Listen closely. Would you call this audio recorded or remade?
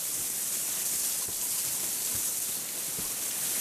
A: recorded